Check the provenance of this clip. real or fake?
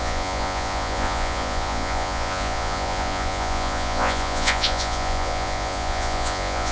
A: fake